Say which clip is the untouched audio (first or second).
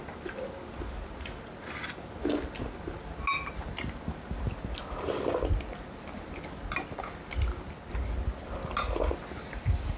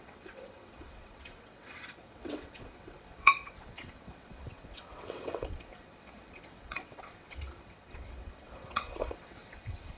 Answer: first